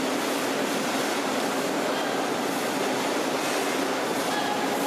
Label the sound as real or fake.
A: real